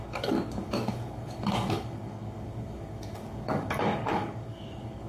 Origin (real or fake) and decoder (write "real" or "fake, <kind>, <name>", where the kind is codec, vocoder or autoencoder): fake, codec, DAC